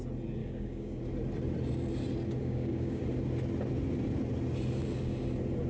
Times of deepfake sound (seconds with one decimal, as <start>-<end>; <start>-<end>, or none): 0.4-1.0; 2.4-3.0

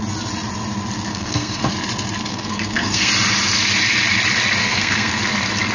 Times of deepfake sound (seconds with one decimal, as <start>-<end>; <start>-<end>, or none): 1.1-1.7; 2.3-3.1; 4.6-5.2

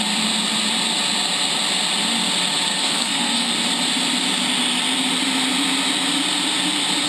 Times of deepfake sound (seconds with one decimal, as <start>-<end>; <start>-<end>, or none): 2.7-3.5

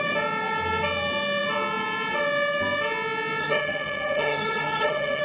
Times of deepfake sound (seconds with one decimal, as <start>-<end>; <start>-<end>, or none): 3.4-5.2

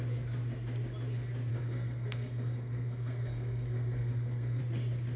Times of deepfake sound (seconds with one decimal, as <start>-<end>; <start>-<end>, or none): 1.5-4.6